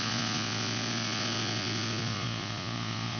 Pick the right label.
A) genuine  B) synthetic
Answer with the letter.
B